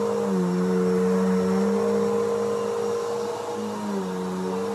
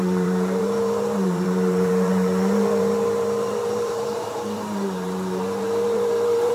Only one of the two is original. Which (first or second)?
first